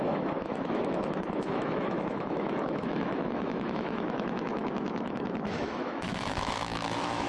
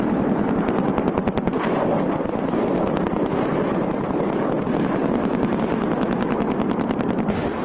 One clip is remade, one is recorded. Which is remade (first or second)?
first